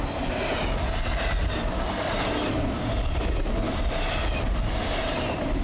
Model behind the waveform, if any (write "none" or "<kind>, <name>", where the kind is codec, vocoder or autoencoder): none